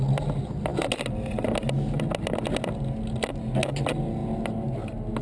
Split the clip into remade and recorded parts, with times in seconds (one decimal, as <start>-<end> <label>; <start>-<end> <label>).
0.0-5.2 recorded